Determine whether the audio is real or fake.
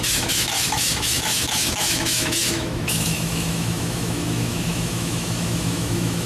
fake